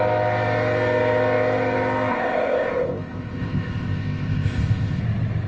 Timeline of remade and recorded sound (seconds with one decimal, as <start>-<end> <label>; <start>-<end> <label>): 0.0-2.1 recorded; 2.1-5.0 remade; 5.0-5.5 recorded

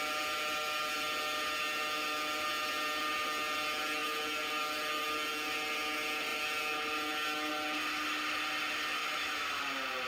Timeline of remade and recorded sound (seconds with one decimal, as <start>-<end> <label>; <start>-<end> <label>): 0.0-9.0 recorded; 9.0-9.6 remade; 9.6-10.1 recorded

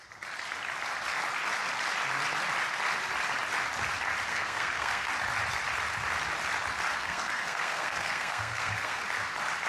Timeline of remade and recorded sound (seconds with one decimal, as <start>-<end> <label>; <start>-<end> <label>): 0.0-4.3 recorded; 4.3-5.1 remade; 5.1-7.0 recorded; 7.0-9.0 remade; 9.0-9.7 recorded